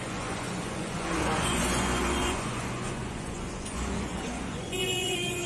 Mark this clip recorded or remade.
remade